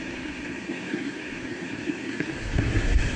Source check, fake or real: fake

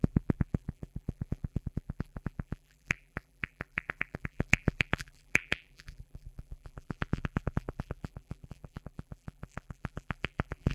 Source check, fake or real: fake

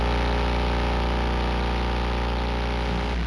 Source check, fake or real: real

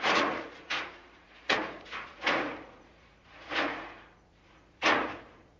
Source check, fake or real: fake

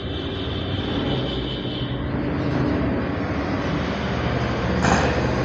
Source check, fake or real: real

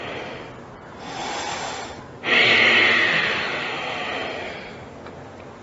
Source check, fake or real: real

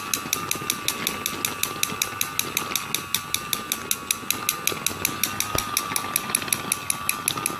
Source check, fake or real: real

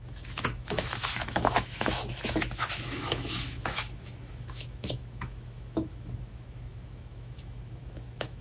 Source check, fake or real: fake